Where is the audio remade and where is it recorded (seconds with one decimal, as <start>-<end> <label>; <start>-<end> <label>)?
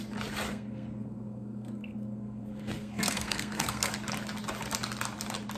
0.0-0.5 recorded; 0.5-3.9 remade; 3.9-5.6 recorded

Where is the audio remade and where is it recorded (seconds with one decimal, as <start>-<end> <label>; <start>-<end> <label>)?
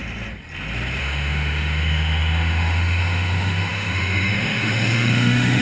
0.0-1.0 recorded; 1.0-5.6 remade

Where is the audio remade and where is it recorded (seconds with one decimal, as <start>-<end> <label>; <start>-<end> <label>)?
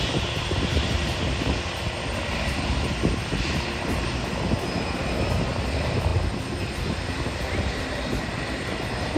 0.0-9.2 recorded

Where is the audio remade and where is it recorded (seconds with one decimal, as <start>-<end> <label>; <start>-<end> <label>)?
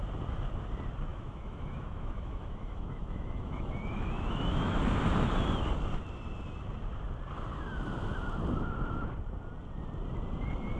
0.0-1.1 recorded; 1.1-4.8 remade; 4.8-10.8 recorded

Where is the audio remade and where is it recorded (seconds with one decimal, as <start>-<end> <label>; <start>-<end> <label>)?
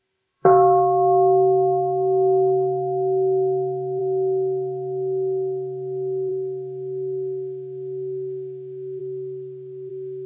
0.0-4.0 remade; 4.0-6.3 recorded; 6.3-9.0 remade; 9.0-9.9 recorded; 9.9-10.3 remade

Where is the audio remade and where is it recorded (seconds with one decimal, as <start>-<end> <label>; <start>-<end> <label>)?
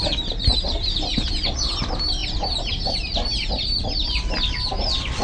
0.0-5.2 recorded